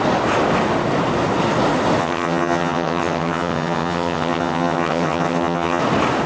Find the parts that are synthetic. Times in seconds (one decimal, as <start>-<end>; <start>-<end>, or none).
2.0-5.8